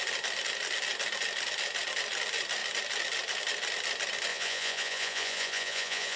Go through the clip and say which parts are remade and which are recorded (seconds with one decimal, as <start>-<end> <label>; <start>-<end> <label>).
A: 0.0-4.3 recorded; 4.3-6.2 remade